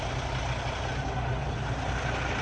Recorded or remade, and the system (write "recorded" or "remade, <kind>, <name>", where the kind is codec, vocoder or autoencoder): recorded